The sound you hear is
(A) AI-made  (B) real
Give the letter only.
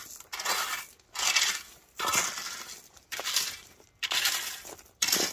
B